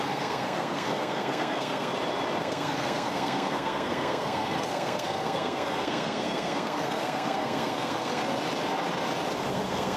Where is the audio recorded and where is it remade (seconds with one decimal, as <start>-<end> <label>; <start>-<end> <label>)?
0.0-1.9 remade; 1.9-2.4 recorded; 2.4-8.2 remade; 8.2-9.5 recorded; 9.5-10.0 remade